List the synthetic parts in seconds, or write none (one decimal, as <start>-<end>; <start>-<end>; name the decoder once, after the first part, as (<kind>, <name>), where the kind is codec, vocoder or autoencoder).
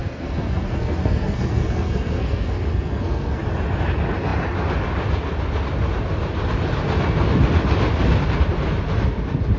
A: 0.0-3.4 (codec, SNAC)